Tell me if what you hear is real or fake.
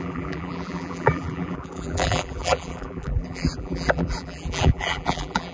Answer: fake